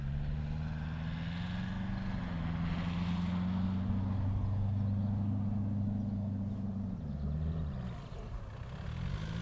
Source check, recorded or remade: recorded